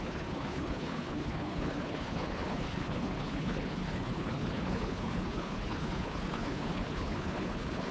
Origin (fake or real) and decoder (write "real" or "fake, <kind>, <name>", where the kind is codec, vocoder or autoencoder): fake, codec, HILCodec